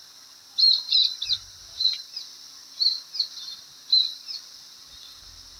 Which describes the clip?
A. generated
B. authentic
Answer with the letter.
A